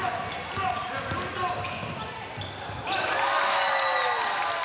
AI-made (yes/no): no